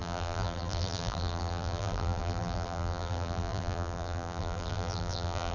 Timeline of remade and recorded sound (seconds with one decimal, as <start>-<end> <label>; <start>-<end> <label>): 0.0-5.5 remade